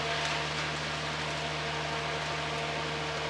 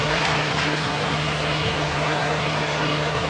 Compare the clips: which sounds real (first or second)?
first